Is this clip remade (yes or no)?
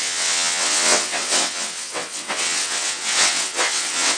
yes